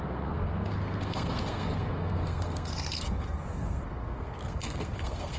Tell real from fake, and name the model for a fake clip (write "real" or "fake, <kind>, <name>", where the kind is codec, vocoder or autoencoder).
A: fake, codec, SNAC